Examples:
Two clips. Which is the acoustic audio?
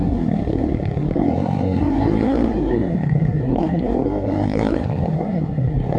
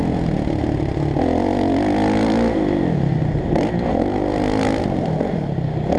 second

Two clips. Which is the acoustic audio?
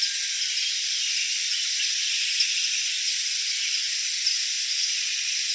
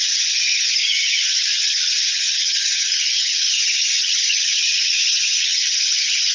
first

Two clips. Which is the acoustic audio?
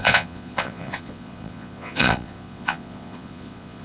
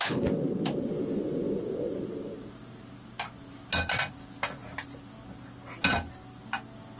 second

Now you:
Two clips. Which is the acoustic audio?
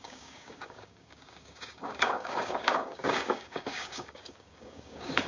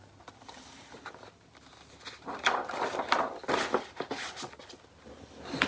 second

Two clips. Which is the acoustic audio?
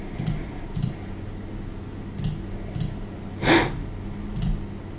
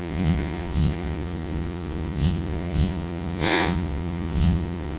first